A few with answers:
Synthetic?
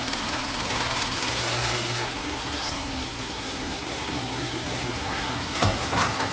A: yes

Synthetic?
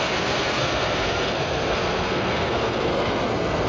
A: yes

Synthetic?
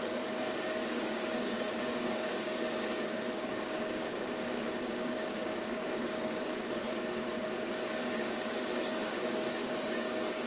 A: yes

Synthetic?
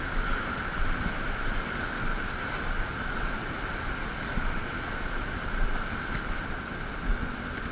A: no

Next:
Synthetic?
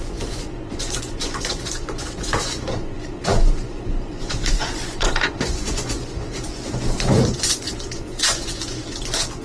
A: yes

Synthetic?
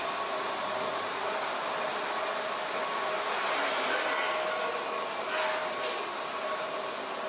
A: no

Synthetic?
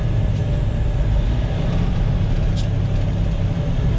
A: no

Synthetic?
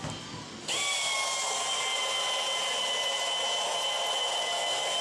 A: no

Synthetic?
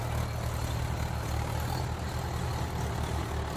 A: no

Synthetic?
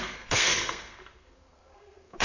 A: yes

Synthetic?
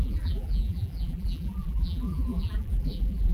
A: yes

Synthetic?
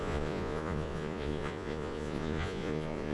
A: yes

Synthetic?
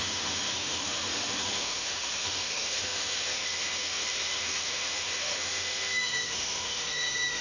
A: yes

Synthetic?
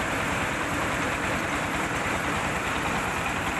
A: no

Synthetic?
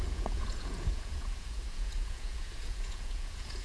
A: yes